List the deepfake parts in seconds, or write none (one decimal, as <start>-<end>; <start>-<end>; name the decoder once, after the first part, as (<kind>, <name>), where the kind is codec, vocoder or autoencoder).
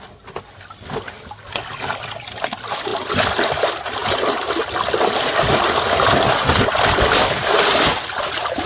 none